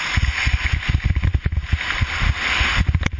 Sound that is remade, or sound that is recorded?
recorded